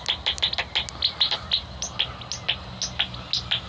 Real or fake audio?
real